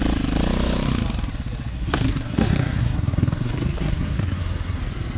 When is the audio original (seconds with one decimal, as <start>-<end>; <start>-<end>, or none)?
0.0-1.7; 4.8-5.2